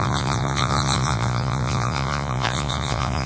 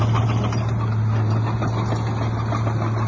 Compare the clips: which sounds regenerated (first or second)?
first